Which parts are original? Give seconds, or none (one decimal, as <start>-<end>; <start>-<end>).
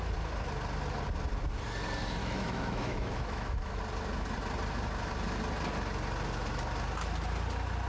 0.0-2.2; 3.8-7.9